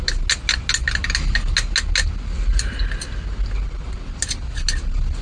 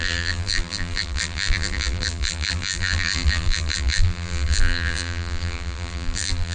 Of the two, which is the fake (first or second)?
second